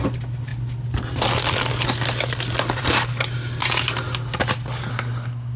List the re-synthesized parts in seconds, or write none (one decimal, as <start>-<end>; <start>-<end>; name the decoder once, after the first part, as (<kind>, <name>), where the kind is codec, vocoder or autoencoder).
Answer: 4.9-5.6 (codec, SNAC)

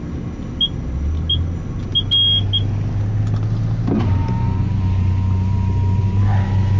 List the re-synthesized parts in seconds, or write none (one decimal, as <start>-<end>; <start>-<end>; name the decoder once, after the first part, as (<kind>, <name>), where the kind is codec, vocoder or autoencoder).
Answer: none